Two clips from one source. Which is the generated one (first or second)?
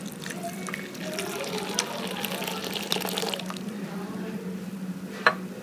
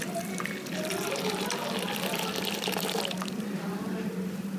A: second